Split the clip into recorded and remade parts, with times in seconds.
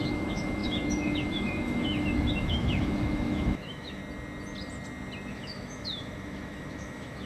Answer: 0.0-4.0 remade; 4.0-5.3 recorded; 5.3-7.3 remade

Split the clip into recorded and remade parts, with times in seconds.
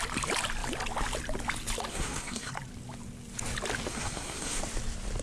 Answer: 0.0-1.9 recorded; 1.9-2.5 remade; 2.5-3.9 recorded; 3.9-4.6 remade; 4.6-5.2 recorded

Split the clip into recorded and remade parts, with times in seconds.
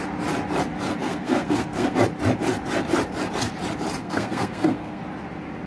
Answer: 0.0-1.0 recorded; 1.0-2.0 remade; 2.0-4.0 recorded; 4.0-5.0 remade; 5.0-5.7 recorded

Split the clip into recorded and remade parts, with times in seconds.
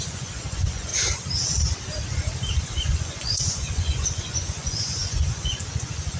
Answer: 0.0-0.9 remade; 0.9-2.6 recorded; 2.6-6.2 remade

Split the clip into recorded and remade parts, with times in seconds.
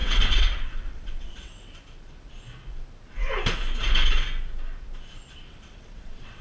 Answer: 0.0-1.8 remade; 1.8-5.5 recorded; 5.5-6.4 remade